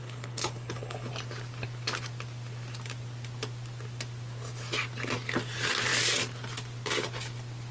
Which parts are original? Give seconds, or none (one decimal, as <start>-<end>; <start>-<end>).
1.1-7.7